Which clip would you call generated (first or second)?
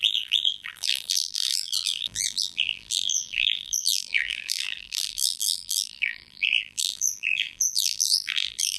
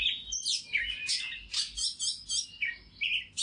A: first